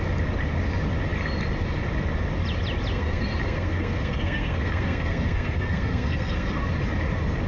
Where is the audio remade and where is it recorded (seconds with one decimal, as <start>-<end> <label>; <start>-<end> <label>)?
0.0-2.9 recorded; 2.9-6.6 remade; 6.6-7.5 recorded